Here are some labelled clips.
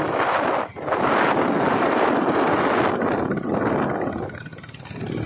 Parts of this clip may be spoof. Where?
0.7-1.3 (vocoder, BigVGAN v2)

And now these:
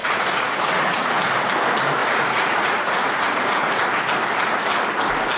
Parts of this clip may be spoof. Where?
0.0-1.2 (vocoder, Vocos); 2.0-3.6

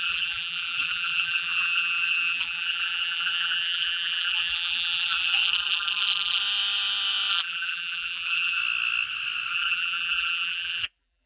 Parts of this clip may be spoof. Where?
0.0-6.4 (vocoder, BigVGAN v2); 7.3-8.6; 9.5-11.3

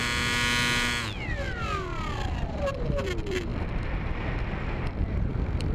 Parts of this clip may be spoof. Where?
2.6-3.5 (vocoder, BigVGAN v2); 5.3-5.7

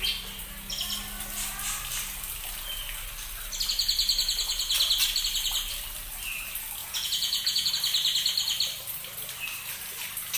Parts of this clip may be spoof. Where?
6.8-7.7 (vocoder, Vocos)